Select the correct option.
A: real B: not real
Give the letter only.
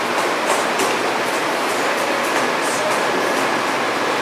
A